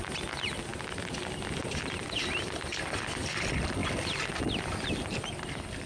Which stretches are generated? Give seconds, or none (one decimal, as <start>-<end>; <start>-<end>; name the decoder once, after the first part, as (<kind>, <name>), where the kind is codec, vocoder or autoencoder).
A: none